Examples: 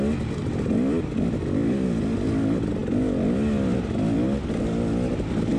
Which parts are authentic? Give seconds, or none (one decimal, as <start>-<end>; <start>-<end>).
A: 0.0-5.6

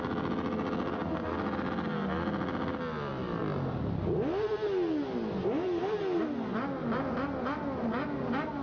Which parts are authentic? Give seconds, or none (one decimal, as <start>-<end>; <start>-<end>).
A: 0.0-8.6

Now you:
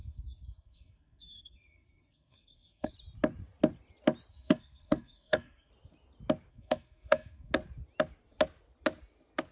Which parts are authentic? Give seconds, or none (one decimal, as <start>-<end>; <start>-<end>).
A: 2.9-4.3; 5.7-6.5; 7.5-9.5

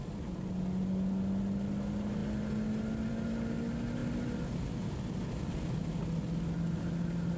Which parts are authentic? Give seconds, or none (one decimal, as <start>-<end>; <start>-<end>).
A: 0.0-7.4